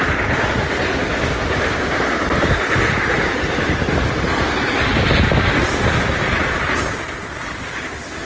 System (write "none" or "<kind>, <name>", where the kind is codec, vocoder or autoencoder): none